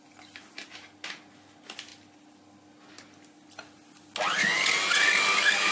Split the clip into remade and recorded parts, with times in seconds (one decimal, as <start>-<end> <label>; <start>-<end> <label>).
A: 0.0-5.7 recorded